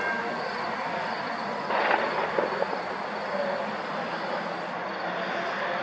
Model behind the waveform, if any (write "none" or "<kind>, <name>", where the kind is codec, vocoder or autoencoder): none